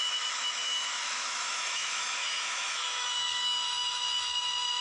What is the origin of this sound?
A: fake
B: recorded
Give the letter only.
A